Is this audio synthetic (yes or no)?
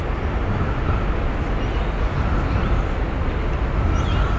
no